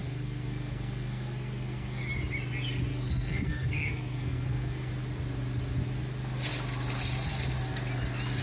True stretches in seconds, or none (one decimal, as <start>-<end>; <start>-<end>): 2.0-2.9; 4.9-8.4